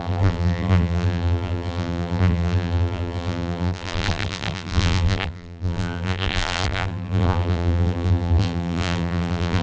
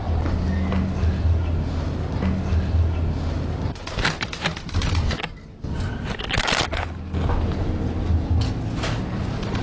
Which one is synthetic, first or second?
first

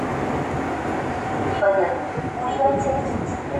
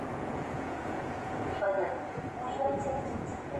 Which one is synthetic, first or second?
second